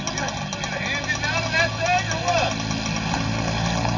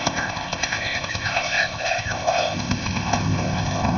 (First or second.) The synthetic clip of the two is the second